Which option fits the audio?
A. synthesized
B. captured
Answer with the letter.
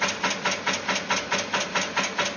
B